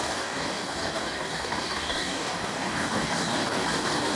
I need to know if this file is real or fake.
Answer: fake